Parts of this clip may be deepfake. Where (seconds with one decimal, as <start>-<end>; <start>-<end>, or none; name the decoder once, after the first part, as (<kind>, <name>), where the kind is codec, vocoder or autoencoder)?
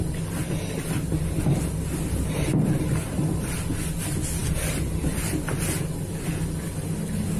4.4-5.0 (vocoder, BigVGAN v2)